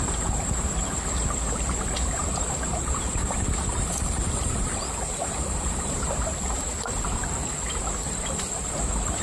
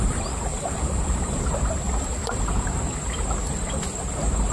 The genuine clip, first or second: second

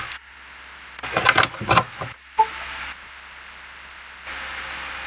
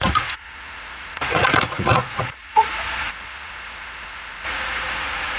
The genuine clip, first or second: first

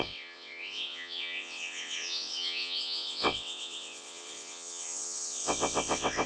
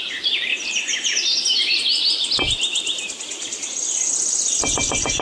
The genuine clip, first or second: second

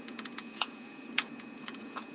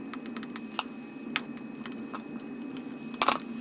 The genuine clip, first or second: second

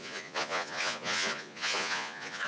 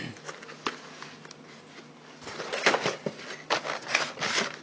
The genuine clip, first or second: second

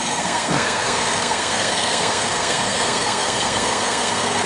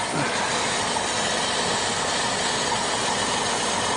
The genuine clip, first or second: second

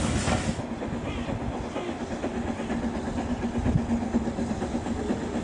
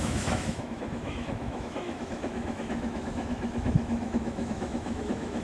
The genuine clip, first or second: first